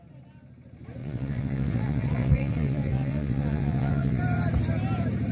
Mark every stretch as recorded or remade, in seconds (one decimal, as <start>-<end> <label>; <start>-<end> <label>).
0.0-1.0 recorded; 1.0-4.2 remade; 4.2-5.3 recorded